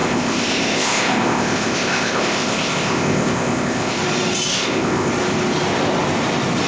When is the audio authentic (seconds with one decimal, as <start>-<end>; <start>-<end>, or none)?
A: 4.0-4.5; 5.1-6.7